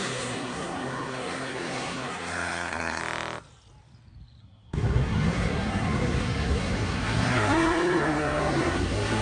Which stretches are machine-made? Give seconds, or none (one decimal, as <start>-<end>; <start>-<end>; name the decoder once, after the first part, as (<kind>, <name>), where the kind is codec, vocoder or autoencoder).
0.0-3.0 (codec, SNAC); 4.4-9.2